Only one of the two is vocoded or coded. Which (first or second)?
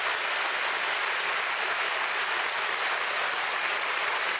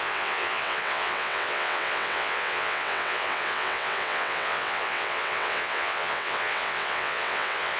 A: second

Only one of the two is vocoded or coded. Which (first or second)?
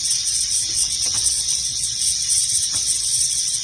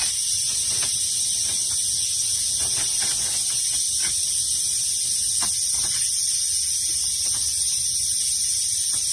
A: first